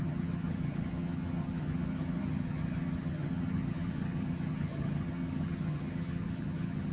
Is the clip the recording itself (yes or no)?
no